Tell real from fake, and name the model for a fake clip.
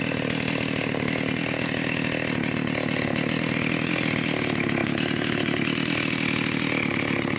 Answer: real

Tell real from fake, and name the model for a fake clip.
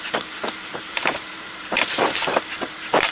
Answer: fake, vocoder, BigVGAN v2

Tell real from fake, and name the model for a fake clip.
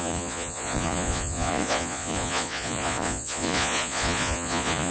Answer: fake, vocoder, Vocos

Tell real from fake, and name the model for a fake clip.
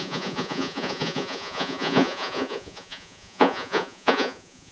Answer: fake, vocoder, Vocos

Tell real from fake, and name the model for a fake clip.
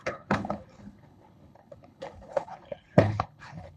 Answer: fake, codec, HILCodec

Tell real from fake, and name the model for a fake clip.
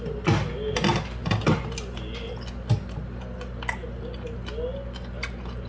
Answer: real